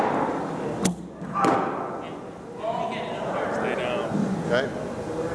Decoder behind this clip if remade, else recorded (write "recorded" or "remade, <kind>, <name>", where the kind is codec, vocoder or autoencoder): recorded